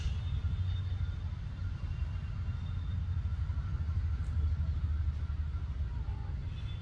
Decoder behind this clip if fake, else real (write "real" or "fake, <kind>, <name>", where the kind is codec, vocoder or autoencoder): real